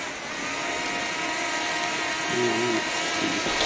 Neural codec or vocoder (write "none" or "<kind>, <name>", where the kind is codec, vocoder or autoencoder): none